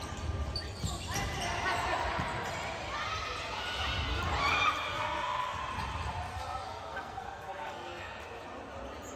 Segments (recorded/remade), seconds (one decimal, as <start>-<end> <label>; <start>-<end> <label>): 0.0-4.9 recorded; 4.9-5.6 remade; 5.6-6.3 recorded; 6.3-8.2 remade; 8.2-9.2 recorded